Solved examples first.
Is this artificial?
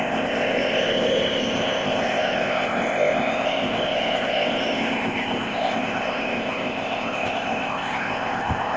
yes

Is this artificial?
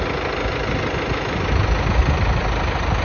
no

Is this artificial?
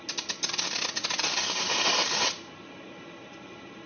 no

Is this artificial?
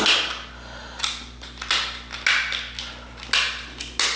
no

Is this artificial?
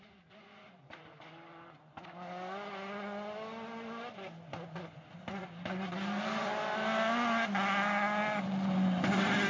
no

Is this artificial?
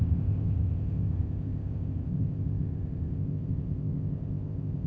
yes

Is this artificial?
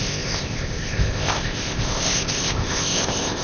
yes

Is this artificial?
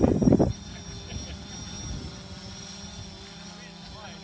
no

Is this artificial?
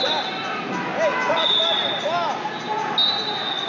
no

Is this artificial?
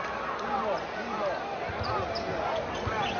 no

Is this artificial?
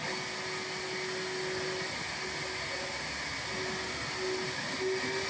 no